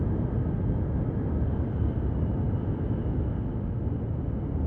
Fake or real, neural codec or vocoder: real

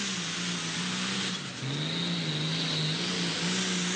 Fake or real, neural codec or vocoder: real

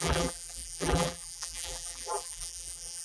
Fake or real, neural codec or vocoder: fake, vocoder, BigVGAN v2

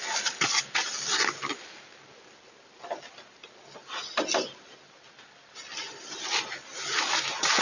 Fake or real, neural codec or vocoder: real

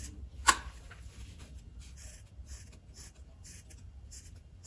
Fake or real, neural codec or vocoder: real